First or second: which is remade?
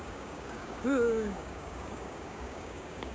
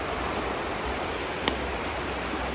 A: first